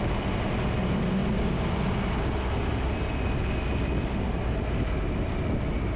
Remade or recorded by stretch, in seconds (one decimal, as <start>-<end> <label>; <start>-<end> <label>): 0.0-6.0 recorded